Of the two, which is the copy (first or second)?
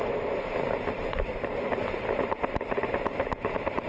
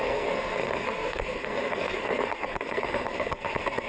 second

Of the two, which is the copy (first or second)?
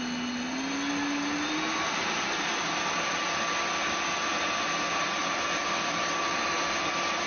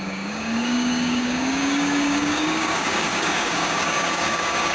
second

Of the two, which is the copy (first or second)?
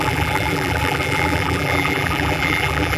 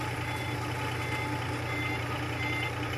first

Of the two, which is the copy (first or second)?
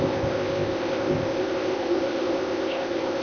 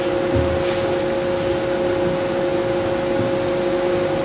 first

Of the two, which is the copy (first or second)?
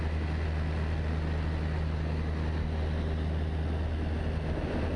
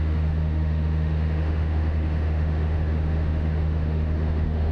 second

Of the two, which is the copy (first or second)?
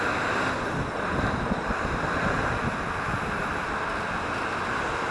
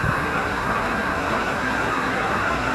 second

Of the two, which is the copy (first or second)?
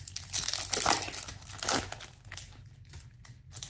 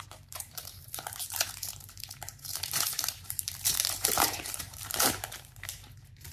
second